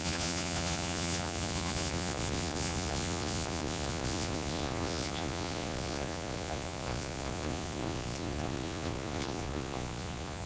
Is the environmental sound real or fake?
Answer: fake